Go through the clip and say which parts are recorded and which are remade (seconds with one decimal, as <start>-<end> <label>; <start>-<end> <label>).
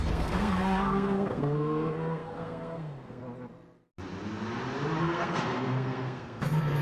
0.0-3.2 remade; 3.2-5.0 recorded; 5.0-6.8 remade